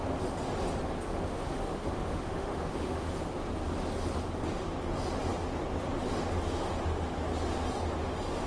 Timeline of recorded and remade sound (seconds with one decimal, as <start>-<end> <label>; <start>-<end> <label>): 0.0-1.1 recorded; 1.1-3.1 remade; 3.1-8.5 recorded